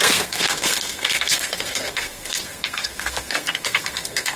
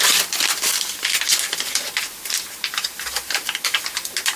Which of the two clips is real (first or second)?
second